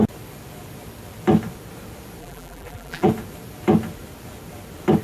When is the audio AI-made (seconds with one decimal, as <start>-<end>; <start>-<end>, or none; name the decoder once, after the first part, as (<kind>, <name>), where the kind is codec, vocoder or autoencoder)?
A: 2.2-3.1 (vocoder, BigVGAN v2)

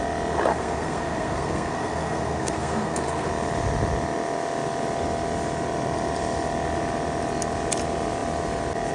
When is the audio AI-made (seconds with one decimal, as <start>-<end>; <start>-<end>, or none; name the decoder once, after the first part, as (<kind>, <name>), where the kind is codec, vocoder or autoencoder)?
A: 0.5-3.3 (codec, SNAC)

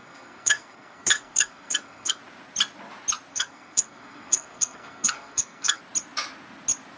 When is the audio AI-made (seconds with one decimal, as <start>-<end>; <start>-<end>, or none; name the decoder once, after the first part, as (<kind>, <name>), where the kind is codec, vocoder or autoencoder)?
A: 0.0-2.2 (codec, SNAC); 3.3-5.8

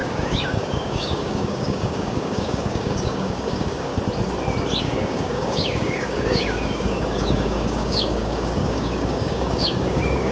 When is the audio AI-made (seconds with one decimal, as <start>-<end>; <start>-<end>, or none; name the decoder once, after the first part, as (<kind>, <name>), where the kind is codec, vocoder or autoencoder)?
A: 0.0-3.9 (codec, DAC); 4.8-10.3

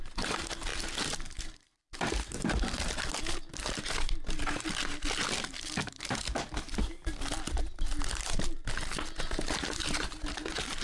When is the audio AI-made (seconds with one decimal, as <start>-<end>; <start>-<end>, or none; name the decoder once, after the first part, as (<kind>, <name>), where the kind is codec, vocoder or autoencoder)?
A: none

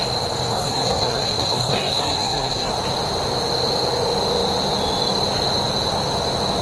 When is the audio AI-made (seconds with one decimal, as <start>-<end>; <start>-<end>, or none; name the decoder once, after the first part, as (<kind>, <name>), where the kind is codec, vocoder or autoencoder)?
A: 0.5-2.7 (codec, SNAC)

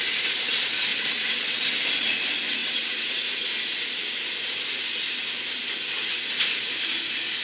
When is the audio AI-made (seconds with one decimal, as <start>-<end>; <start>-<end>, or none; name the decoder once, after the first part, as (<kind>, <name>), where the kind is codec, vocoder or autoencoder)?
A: 0.9-1.6 (vocoder, WaveNeXt); 2.6-3.2